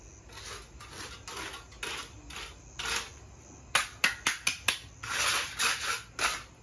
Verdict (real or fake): real